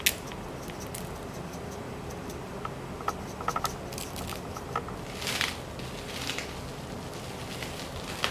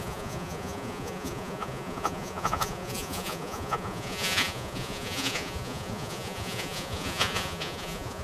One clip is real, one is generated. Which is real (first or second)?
first